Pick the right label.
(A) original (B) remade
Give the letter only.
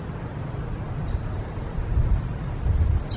A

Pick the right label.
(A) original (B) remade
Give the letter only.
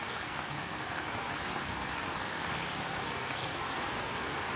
B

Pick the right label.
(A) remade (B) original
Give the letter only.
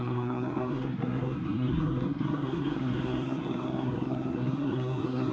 A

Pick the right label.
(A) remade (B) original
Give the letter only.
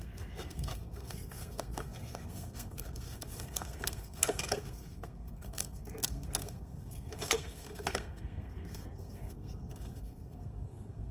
A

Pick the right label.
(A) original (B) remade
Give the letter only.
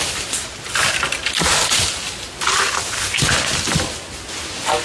A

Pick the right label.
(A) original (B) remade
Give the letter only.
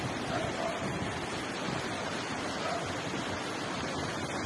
A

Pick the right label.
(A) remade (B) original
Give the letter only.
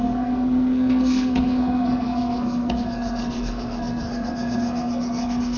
A